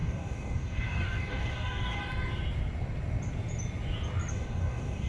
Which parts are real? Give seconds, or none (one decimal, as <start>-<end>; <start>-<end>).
2.0-4.3